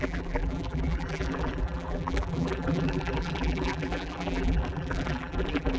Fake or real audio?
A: fake